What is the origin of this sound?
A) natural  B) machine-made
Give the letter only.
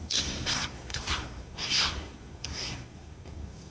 B